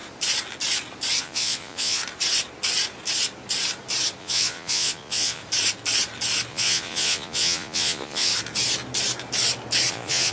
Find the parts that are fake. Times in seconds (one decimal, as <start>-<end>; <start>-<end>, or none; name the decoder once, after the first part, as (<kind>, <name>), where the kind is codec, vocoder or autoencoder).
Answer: 1.2-2.0 (vocoder, Vocos); 4.2-5.4; 6.5-8.3; 9.9-10.3

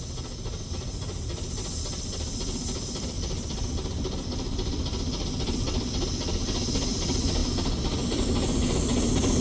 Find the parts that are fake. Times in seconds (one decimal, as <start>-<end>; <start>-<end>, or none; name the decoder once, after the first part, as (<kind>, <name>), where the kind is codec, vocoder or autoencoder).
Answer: none

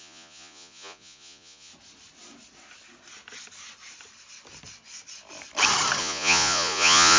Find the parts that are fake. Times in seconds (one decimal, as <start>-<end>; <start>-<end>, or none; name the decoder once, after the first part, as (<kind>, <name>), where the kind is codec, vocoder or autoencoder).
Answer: 0.0-1.7 (vocoder, Vocos); 6.0-7.2